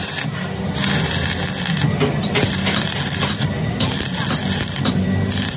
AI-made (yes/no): no